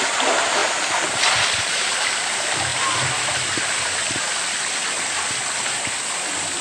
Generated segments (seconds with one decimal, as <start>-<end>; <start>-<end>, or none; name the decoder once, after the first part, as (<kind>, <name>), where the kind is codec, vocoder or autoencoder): none